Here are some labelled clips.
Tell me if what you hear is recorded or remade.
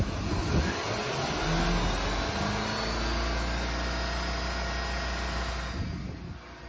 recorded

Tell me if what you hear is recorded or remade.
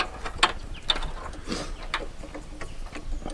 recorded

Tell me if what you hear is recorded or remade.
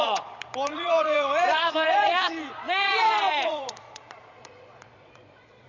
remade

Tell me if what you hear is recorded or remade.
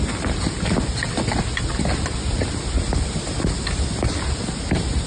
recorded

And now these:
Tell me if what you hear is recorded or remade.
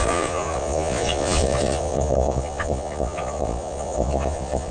remade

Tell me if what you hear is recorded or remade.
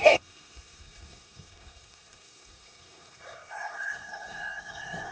remade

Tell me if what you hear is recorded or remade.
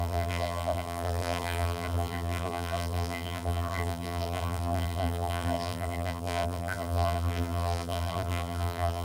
remade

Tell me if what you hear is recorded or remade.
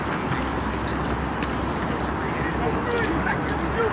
recorded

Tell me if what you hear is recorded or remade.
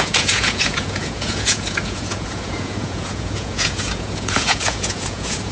remade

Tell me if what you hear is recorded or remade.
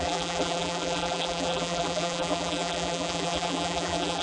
remade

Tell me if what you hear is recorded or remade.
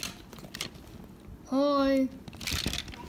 recorded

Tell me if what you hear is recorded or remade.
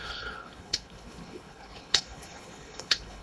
remade